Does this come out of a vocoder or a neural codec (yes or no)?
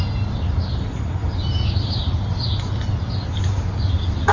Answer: no